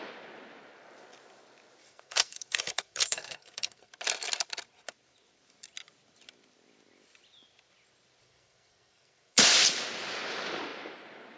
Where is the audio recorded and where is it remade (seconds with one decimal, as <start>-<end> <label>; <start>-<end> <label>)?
0.0-1.8 recorded; 1.8-3.9 remade; 3.9-8.2 recorded; 8.2-9.4 remade; 9.4-11.4 recorded